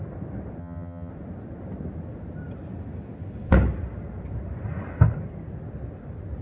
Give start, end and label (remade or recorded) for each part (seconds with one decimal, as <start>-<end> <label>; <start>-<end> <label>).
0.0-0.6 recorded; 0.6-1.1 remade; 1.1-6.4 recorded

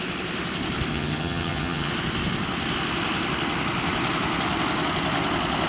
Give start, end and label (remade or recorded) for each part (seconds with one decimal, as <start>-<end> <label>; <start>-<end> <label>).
0.0-0.9 recorded; 0.9-1.9 remade; 1.9-5.7 recorded

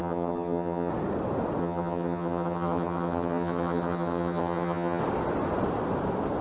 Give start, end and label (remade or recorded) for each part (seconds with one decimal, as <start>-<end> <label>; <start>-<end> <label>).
0.0-0.9 remade; 0.9-1.6 recorded; 1.6-5.0 remade; 5.0-6.4 recorded

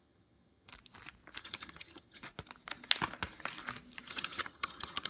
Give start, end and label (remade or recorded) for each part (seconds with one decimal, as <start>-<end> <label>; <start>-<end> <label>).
0.0-0.7 remade; 0.7-1.4 recorded; 1.4-2.2 remade; 2.2-4.1 recorded; 4.1-5.1 remade

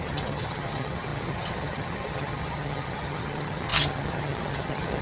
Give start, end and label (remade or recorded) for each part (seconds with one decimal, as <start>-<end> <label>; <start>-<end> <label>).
0.0-5.0 remade

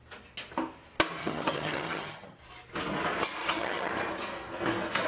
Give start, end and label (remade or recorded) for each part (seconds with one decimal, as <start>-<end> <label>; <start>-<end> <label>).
0.0-1.2 recorded; 1.2-2.4 remade; 2.4-3.4 recorded; 3.4-3.9 remade; 3.9-5.1 recorded